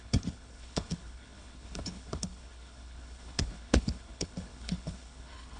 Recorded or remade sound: remade